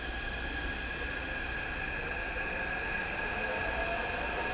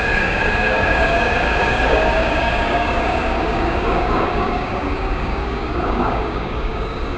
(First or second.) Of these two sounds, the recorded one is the first